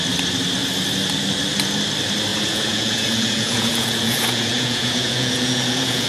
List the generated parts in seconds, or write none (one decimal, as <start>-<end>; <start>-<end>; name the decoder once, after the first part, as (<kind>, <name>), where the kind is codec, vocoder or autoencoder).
2.3-6.1 (vocoder, Vocos)